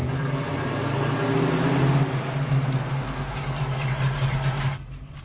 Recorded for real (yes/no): yes